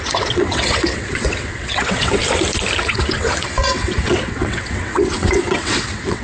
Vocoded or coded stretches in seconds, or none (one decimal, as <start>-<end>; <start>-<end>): 0.0-2.2; 2.8-6.2